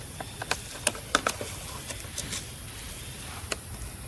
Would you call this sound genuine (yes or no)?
yes